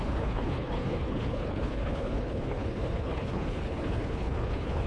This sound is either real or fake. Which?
fake